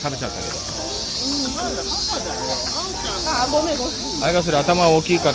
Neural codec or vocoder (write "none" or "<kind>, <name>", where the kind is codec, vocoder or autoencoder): none